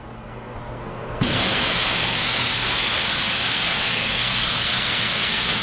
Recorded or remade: remade